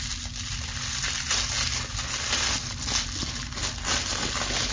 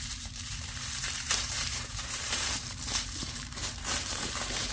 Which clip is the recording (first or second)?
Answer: first